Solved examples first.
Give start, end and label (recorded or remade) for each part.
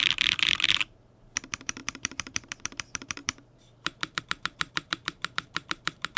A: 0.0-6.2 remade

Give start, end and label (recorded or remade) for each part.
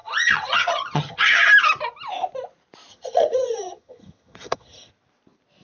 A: 0.0-1.5 remade; 1.5-2.9 recorded; 2.9-4.9 remade; 4.9-5.6 recorded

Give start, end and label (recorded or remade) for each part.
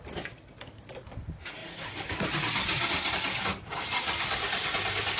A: 0.0-5.2 recorded